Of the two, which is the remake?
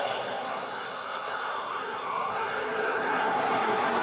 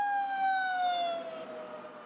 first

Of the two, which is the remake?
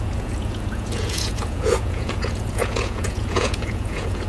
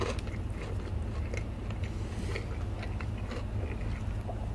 first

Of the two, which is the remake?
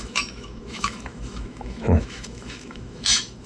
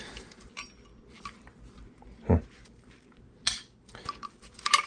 first